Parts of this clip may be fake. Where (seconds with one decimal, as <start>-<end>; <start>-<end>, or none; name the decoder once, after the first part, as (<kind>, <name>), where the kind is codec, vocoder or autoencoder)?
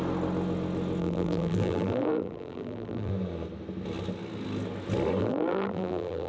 1.0-3.1 (vocoder, BigVGAN v2); 5.2-6.3